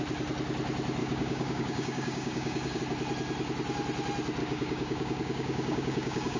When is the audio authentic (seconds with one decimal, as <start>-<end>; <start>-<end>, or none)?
0.0-1.0; 2.8-4.4